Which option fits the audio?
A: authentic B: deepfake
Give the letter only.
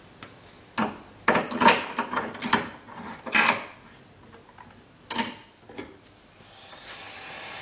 A